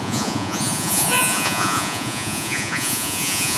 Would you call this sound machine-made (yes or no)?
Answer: yes